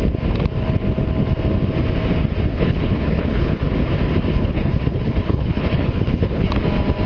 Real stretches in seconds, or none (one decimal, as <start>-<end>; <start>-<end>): 0.0-2.5; 3.6-4.3; 6.5-7.1